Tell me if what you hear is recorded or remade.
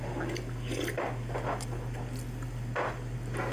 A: recorded